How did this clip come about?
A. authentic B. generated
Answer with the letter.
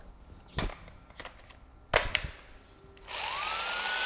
A